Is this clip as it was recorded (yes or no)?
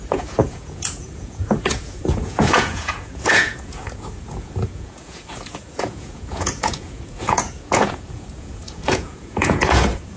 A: no